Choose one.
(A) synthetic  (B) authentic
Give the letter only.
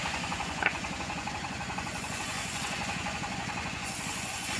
A